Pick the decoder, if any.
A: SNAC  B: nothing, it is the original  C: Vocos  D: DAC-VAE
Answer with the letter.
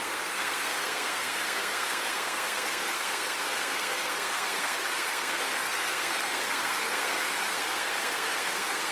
A